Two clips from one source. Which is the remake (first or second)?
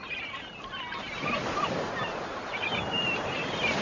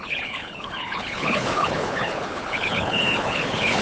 second